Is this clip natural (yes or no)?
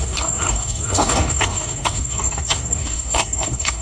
no